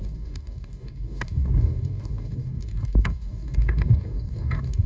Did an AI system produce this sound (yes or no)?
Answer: yes